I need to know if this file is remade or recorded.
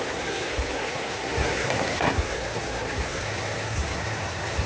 remade